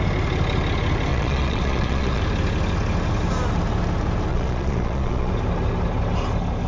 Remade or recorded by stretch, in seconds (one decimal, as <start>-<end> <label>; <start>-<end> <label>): 0.0-1.1 recorded; 1.1-2.2 remade; 2.2-4.3 recorded; 4.3-5.3 remade; 5.3-6.7 recorded